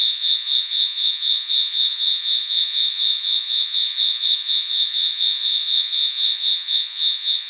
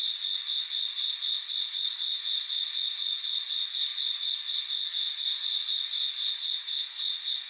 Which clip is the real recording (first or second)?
second